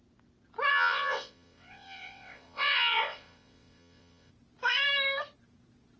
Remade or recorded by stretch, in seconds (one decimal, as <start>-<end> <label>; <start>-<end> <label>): 0.0-0.7 recorded; 0.7-4.3 remade; 4.3-6.0 recorded